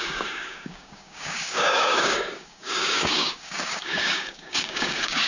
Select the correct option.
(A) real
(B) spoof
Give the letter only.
B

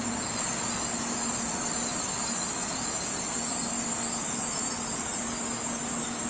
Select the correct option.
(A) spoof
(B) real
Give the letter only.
B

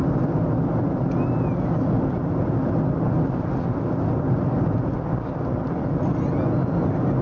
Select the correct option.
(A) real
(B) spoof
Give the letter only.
A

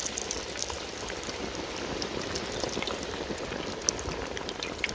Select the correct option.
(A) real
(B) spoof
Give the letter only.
A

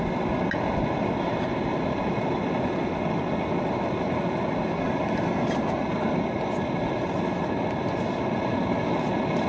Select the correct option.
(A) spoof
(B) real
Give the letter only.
B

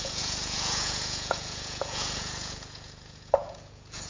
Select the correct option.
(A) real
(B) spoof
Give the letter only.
B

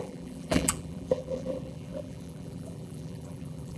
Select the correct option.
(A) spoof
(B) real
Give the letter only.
A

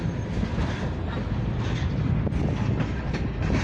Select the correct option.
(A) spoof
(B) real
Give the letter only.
B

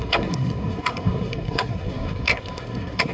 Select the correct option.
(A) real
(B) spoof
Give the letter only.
B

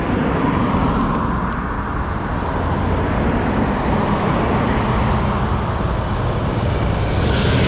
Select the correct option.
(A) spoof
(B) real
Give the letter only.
B